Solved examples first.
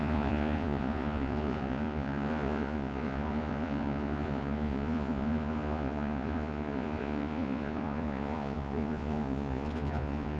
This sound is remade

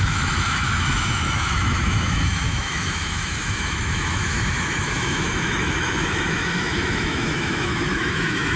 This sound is remade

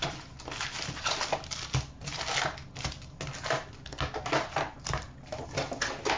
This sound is recorded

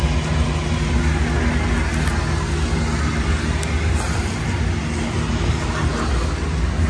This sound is recorded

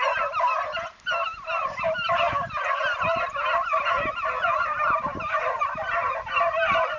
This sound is recorded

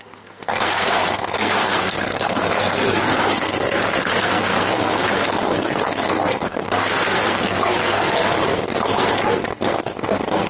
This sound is remade